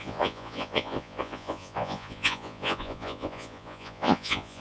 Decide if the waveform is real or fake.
fake